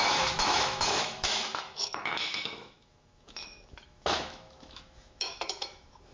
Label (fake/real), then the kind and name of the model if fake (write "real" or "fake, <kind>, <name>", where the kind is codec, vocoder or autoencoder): fake, autoencoder, DAC-VAE